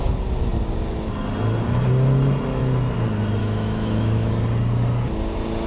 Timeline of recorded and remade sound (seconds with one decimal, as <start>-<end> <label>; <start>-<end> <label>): 0.0-3.4 recorded; 3.4-4.3 remade; 4.3-5.7 recorded